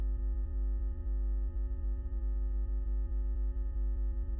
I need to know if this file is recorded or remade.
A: remade